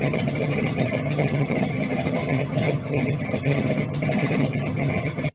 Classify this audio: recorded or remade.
remade